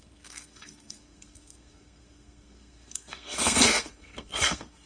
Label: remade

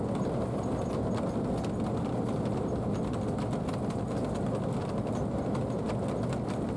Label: recorded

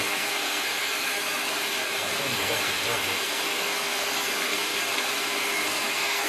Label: remade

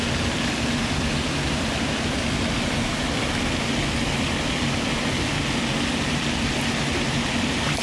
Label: recorded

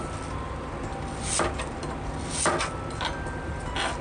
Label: recorded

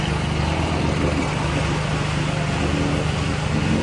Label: recorded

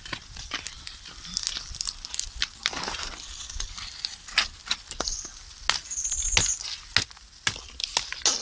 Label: recorded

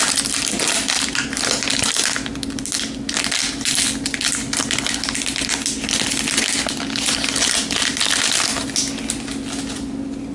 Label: recorded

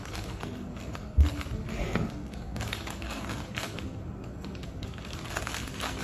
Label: remade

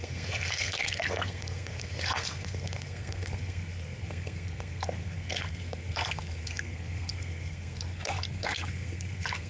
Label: remade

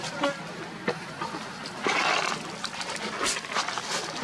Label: recorded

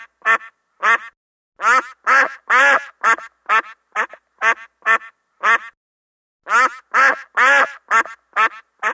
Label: recorded